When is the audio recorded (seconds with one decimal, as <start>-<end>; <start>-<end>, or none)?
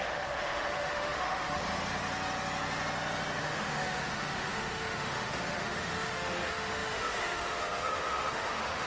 1.6-3.4